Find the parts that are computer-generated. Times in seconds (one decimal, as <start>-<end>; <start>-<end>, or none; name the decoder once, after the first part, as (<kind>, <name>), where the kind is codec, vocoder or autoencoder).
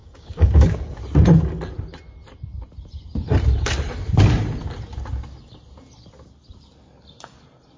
0.0-1.0 (codec, DAC)